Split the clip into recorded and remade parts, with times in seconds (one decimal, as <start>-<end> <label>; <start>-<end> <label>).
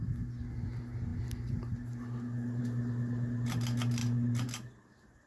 0.0-5.3 recorded